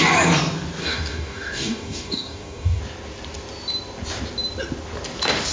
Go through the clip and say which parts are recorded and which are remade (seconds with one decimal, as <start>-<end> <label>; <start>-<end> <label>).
0.0-0.8 recorded; 0.8-2.8 remade; 2.8-5.5 recorded